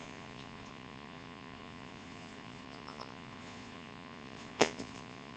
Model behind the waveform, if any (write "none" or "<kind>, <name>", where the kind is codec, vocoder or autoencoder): vocoder, Vocos